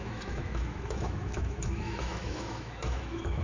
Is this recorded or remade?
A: remade